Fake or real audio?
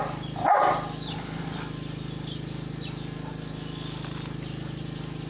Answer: real